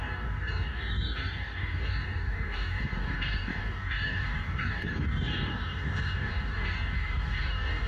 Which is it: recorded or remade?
remade